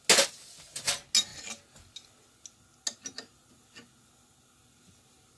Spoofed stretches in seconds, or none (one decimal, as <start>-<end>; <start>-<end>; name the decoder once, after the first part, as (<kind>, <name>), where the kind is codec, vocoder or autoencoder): none